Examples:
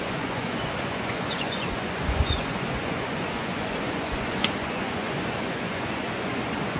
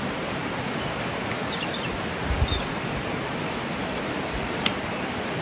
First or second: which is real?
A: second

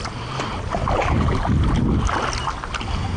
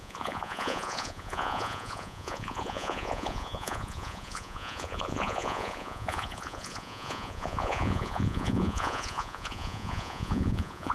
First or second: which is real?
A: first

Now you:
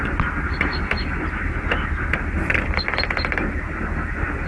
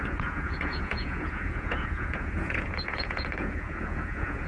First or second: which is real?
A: first